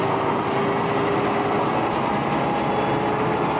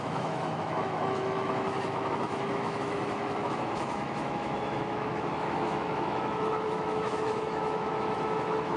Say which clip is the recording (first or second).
first